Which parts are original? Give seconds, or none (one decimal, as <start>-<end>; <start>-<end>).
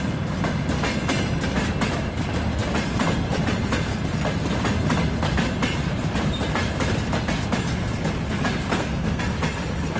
0.0-8.7; 9.2-10.0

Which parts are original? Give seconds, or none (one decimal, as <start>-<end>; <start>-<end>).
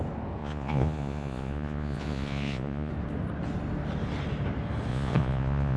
0.0-0.4; 2.9-4.9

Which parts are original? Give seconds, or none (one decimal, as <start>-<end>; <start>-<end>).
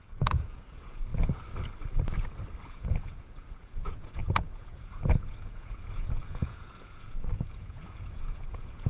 1.1-2.7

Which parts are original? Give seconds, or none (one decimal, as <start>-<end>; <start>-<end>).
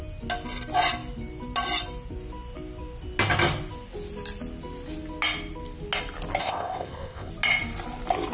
0.0-6.4; 7.3-8.3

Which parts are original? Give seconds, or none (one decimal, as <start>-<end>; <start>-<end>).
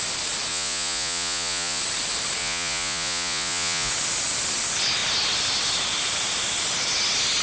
0.0-0.5; 1.8-2.4; 3.9-7.4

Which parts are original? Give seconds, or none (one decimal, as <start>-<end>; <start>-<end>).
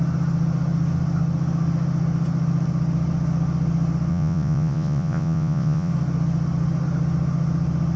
0.0-4.1; 5.9-8.0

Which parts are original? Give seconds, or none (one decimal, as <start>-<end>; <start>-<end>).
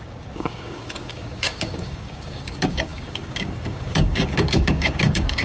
none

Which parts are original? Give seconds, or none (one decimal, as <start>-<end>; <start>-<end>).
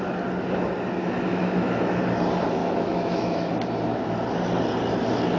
0.0-1.0; 2.0-2.6; 3.5-5.4